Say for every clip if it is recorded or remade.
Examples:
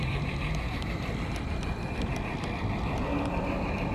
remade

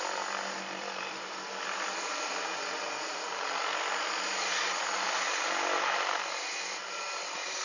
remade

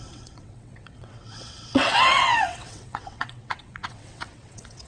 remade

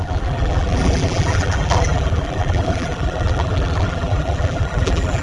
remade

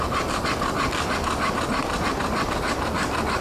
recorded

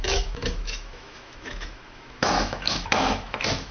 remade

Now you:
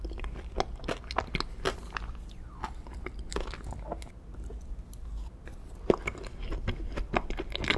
recorded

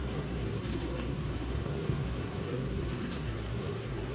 remade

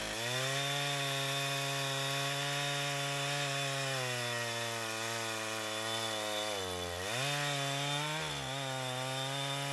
recorded